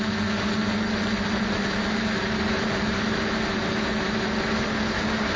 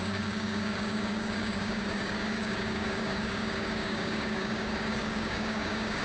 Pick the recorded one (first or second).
first